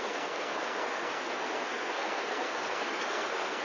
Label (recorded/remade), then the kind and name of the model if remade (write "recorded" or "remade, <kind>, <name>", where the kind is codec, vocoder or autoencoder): remade, codec, SNAC